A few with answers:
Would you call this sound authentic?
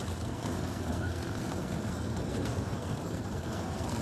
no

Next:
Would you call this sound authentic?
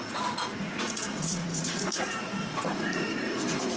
no